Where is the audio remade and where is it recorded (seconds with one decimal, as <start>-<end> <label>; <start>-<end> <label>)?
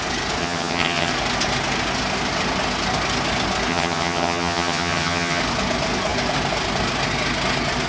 0.0-0.4 recorded; 0.4-1.1 remade; 1.1-3.7 recorded; 3.7-5.4 remade; 5.4-7.9 recorded